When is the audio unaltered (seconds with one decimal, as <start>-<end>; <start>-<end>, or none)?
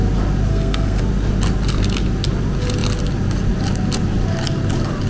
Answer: 0.0-0.5; 1.0-5.1